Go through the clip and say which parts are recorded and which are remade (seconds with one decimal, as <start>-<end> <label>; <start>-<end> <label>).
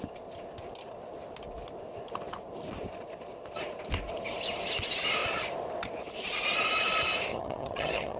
0.0-7.3 recorded; 7.3-8.2 remade